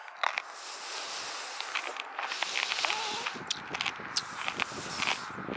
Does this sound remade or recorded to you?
recorded